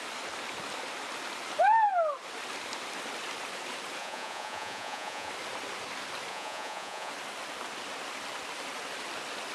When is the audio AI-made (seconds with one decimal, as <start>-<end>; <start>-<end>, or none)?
4.0-5.3; 6.3-7.1